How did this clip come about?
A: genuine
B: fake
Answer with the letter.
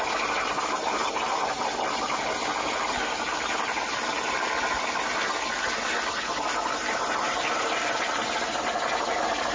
A